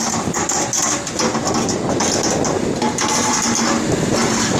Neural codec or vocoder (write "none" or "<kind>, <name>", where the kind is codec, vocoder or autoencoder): none